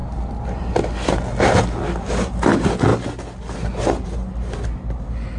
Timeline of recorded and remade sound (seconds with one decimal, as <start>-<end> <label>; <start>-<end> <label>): 0.0-0.7 remade; 0.7-5.4 recorded